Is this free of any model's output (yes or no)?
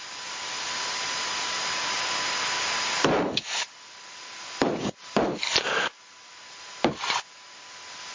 no